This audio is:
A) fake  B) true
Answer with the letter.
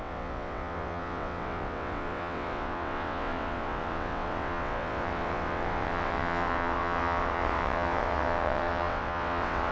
A